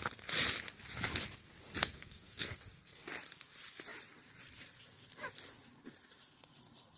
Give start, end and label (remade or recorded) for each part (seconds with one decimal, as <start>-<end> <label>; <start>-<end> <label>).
0.0-1.8 recorded; 1.8-3.0 remade; 3.0-7.0 recorded